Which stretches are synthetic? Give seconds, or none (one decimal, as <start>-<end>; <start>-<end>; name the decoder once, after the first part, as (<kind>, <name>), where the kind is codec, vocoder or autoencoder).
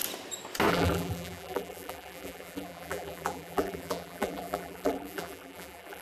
0.7-6.0 (vocoder, BigVGAN v2)